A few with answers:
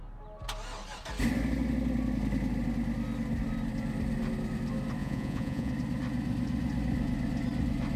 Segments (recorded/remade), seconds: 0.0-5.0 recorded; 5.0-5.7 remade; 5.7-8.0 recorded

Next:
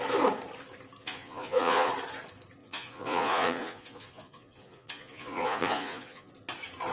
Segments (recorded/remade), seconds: 0.0-1.0 recorded; 1.0-1.9 remade; 1.9-2.6 recorded; 2.6-6.3 remade; 6.3-6.9 recorded

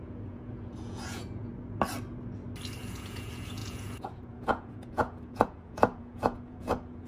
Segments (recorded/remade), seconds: 0.0-1.5 remade; 1.5-2.8 recorded; 2.8-7.1 remade

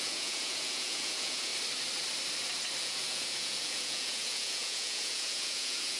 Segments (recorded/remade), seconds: 0.0-1.5 remade; 1.5-2.8 recorded; 2.8-6.0 remade